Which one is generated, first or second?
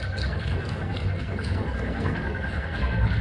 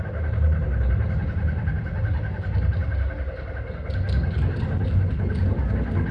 first